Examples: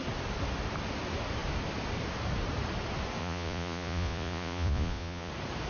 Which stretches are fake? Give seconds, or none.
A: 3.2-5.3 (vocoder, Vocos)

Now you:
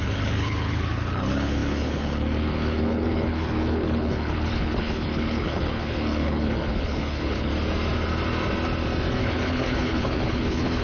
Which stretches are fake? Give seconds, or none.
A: 0.0-7.5 (codec, HILCodec); 9.2-10.8

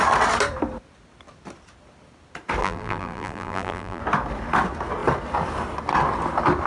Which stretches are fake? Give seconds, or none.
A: 2.6-4.0 (vocoder, BigVGAN v2)